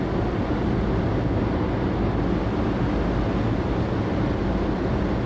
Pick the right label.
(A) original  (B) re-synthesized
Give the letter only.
A